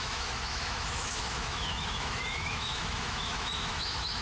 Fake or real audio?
fake